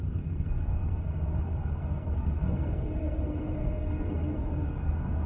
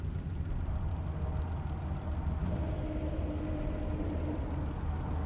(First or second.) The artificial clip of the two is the first